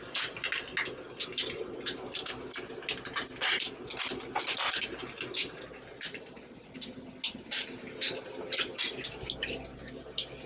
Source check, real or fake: real